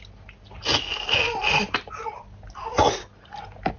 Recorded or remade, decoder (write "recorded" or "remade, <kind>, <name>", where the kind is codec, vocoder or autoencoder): recorded